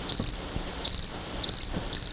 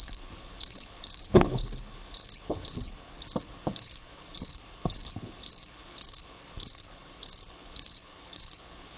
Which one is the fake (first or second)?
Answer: second